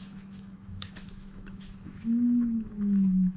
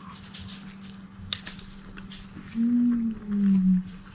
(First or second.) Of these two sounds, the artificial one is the first